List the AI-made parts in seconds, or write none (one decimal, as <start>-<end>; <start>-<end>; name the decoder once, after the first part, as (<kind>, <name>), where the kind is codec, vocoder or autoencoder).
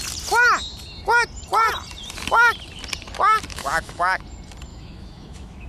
3.5-4.2 (autoencoder, DAC-VAE); 4.7-5.7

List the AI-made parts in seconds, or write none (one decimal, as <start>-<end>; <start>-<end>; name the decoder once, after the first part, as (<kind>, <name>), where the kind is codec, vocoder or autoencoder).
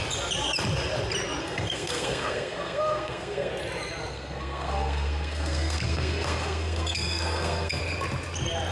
1.4-3.5 (codec, SNAC); 4.1-7.8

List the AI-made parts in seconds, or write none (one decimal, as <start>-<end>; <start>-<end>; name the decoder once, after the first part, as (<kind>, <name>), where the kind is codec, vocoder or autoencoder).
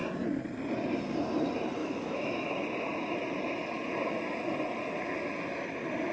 1.8-2.5 (autoencoder, DAC-VAE)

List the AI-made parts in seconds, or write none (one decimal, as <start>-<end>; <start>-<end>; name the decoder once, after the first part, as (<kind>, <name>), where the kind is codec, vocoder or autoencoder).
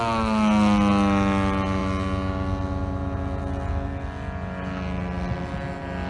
none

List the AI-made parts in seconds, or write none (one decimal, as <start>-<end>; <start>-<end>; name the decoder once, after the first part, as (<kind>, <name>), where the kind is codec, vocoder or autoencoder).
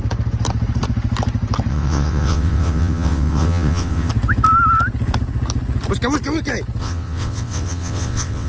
1.7-4.1 (vocoder, WaveNeXt); 6.8-8.5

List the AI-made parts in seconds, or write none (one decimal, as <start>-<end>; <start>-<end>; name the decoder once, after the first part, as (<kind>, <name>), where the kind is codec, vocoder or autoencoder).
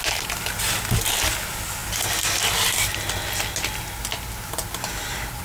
none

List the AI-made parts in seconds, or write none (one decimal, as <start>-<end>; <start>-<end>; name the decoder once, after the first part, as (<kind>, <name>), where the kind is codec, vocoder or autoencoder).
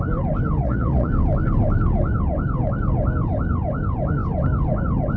0.6-1.1 (vocoder, Vocos)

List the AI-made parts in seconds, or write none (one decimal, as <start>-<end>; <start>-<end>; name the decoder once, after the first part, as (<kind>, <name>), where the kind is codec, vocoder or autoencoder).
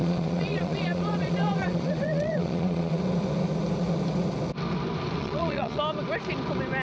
0.0-3.0 (vocoder, Vocos); 5.2-5.8